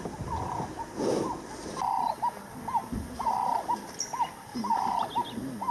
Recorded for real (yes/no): yes